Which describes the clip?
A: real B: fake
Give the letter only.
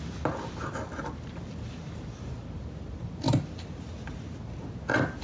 A